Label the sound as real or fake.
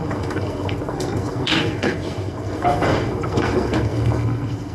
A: fake